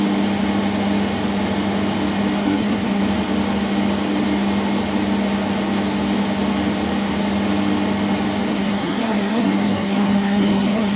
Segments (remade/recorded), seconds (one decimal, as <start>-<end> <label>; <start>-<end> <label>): 0.0-2.4 recorded; 2.4-3.0 remade; 3.0-8.5 recorded; 8.5-11.0 remade